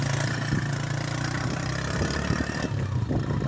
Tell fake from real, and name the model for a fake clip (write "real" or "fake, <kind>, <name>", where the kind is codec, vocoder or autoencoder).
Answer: real